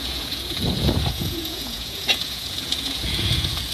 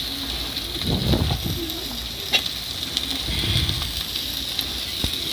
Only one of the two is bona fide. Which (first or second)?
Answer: second